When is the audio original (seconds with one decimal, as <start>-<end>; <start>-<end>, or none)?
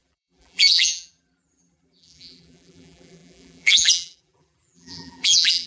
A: none